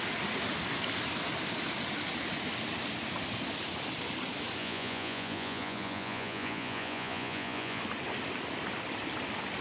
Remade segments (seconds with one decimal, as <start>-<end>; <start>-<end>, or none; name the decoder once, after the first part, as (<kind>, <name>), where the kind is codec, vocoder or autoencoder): 4.6-7.8 (vocoder, Vocos)